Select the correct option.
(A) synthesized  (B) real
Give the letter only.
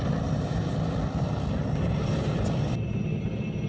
B